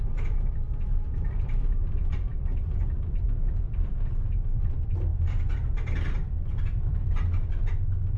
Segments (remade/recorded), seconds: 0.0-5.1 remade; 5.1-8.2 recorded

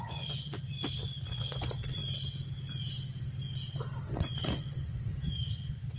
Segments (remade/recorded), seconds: 0.0-0.7 remade; 0.7-1.3 recorded; 1.3-2.0 remade; 2.0-4.1 recorded; 4.1-6.0 remade

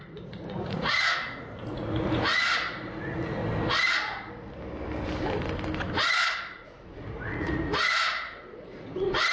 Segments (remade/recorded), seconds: 0.0-3.4 remade; 3.4-5.9 recorded; 5.9-9.3 remade

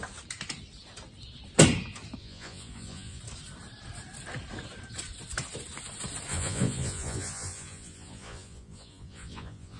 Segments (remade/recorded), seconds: 0.0-2.2 recorded; 2.2-3.2 remade; 3.2-6.3 recorded; 6.3-9.8 remade

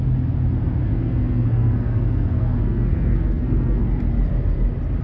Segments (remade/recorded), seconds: 0.0-0.8 recorded; 0.8-3.8 remade; 3.8-5.0 recorded

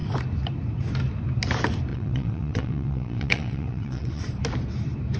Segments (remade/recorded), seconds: 0.0-1.9 recorded; 1.9-4.2 remade; 4.2-5.2 recorded